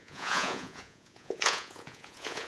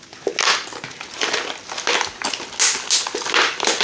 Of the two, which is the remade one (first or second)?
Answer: first